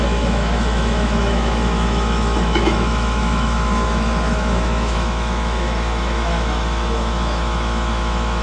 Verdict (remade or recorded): remade